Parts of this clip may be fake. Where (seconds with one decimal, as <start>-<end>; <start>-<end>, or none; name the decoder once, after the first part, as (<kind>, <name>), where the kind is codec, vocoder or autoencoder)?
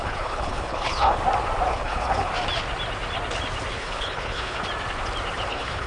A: 0.0-1.2 (codec, HILCodec); 1.7-2.3; 3.7-4.6; 5.5-5.9